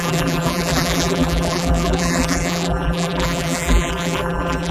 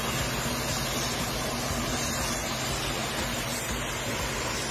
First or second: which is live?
second